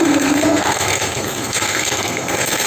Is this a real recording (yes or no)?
no